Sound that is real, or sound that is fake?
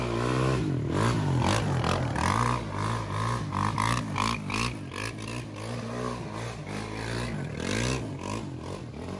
real